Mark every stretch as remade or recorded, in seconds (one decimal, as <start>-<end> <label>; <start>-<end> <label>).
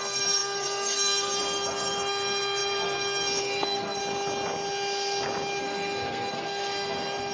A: 0.0-4.0 remade; 4.0-5.6 recorded; 5.6-7.3 remade